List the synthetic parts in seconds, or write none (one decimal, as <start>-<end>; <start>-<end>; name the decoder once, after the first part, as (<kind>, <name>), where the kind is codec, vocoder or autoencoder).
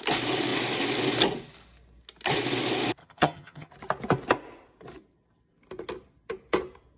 3.0-3.7 (vocoder, HiFi-GAN)